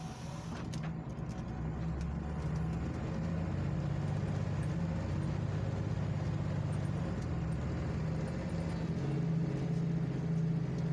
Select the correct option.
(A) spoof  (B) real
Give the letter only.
B